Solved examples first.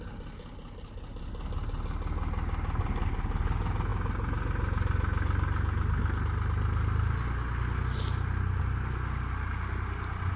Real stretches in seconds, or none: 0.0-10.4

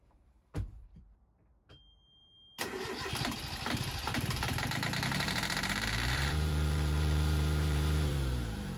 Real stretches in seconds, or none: 2.2-3.7

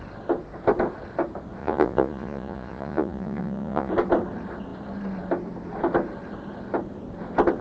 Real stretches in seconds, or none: 0.0-1.6; 3.9-7.6